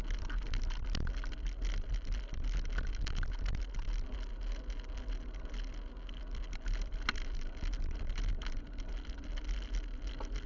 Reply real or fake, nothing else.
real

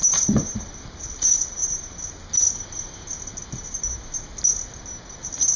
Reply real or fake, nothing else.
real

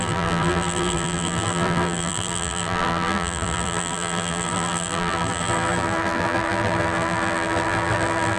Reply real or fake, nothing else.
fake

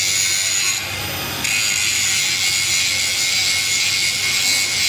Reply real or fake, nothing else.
real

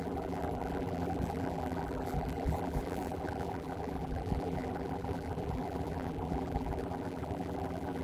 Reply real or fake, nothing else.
fake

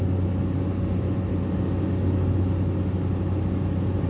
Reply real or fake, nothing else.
real